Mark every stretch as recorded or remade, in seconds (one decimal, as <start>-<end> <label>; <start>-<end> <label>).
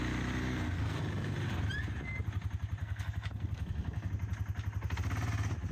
0.0-0.4 recorded; 0.4-1.0 remade; 1.0-2.8 recorded; 2.8-4.1 remade; 4.1-5.7 recorded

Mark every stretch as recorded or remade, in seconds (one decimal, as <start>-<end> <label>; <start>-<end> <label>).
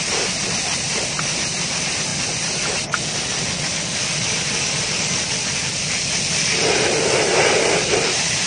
0.0-0.4 remade; 0.4-1.0 recorded; 1.0-2.1 remade; 2.1-7.2 recorded; 7.2-8.5 remade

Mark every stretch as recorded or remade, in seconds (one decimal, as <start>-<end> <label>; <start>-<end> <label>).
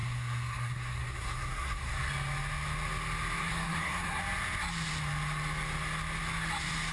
0.0-2.1 remade; 2.1-3.4 recorded; 3.4-4.2 remade; 4.2-6.9 recorded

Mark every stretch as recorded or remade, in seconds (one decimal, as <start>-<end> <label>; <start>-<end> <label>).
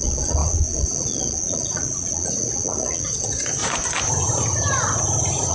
0.0-3.6 remade; 3.6-5.5 recorded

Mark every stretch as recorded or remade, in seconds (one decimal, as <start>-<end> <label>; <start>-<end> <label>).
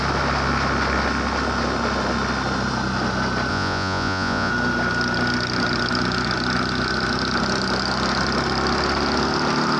0.0-3.5 recorded; 3.5-4.5 remade; 4.5-9.8 recorded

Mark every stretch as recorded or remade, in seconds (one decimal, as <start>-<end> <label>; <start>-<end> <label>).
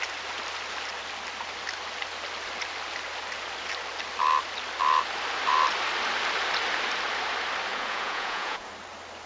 0.0-7.7 recorded; 7.7-8.7 remade; 8.7-9.3 recorded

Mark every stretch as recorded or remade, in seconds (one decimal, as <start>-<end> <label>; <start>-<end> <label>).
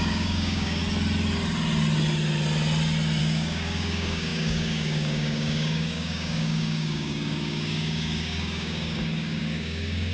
0.0-0.8 remade; 0.8-3.2 recorded; 3.2-10.1 remade